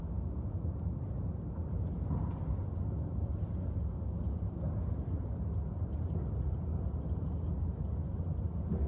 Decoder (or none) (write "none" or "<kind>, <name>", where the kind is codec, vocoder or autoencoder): none